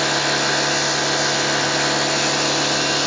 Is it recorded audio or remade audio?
recorded